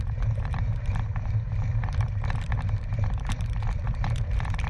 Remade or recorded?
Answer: remade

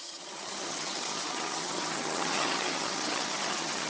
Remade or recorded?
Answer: remade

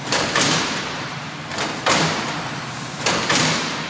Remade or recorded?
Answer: remade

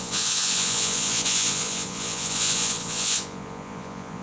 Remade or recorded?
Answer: remade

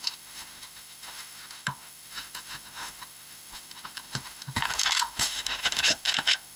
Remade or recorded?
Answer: remade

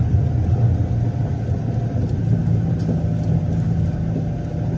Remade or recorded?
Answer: recorded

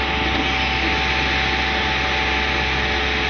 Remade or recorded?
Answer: recorded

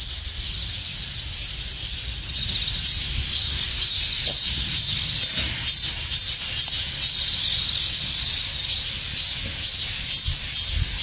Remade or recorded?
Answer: recorded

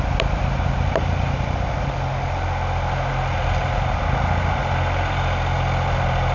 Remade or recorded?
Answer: remade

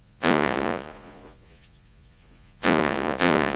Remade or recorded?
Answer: remade